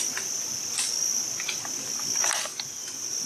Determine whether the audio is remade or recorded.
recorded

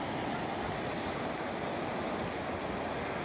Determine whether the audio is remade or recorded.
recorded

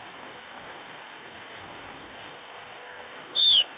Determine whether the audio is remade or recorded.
remade